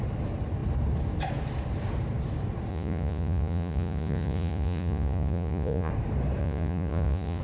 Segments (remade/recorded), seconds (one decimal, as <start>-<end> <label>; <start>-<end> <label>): 0.0-2.7 recorded; 2.7-5.9 remade; 5.9-6.4 recorded; 6.4-7.4 remade

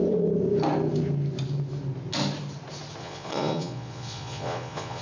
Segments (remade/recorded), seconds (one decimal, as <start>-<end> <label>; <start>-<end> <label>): 0.0-3.0 recorded; 3.0-5.0 remade

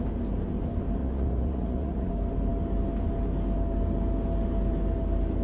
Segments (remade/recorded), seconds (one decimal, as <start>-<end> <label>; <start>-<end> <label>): 0.0-1.0 recorded; 1.0-2.1 remade; 2.1-5.4 recorded

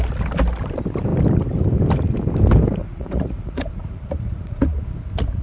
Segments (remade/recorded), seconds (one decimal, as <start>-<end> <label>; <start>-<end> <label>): 0.0-2.8 recorded; 2.8-4.8 remade; 4.8-5.4 recorded

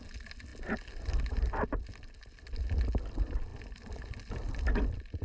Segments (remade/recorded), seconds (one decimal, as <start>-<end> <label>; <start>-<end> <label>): 0.0-5.2 recorded

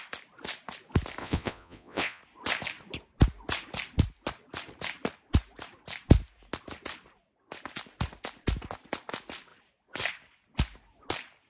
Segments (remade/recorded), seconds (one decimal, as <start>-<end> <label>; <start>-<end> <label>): 0.0-1.2 recorded; 1.2-2.2 remade; 2.2-11.5 recorded